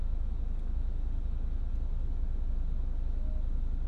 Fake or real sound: real